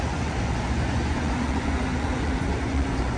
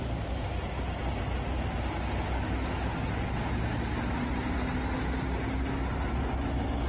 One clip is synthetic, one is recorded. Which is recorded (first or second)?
second